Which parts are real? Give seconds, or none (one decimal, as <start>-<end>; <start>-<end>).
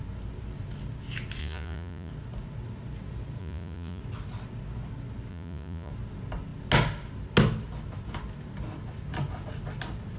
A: 0.0-1.4; 2.1-3.4; 4.0-5.3; 5.9-10.2